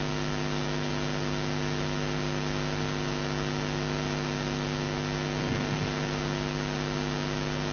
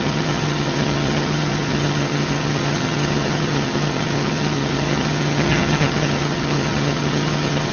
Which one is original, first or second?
first